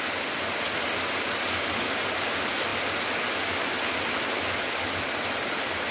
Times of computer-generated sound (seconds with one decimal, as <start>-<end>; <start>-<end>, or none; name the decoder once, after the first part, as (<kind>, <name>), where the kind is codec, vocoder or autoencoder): none